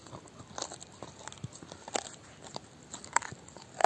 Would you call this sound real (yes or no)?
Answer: yes